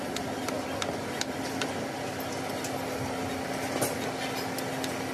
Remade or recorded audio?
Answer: recorded